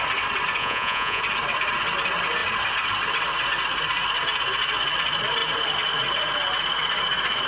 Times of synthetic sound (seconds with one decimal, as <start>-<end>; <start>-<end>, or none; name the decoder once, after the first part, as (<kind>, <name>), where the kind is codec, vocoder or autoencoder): 0.6-1.2 (vocoder, Vocos)